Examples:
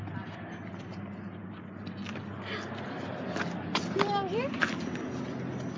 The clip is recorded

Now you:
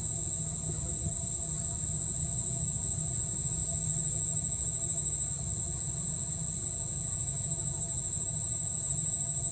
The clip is recorded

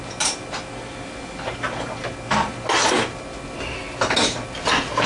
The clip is recorded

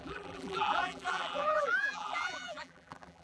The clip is remade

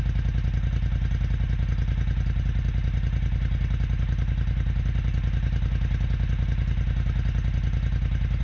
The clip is recorded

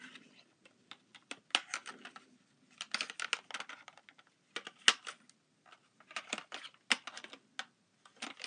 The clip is recorded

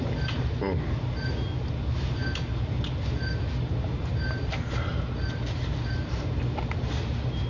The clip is recorded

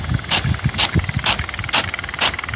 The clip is recorded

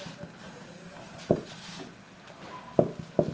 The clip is recorded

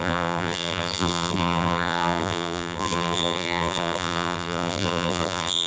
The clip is remade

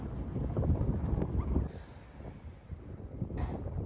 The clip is recorded